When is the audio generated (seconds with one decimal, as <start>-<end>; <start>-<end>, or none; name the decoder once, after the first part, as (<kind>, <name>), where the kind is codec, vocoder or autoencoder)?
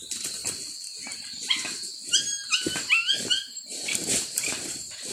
0.0-0.4 (vocoder, BigVGAN v2); 3.3-5.1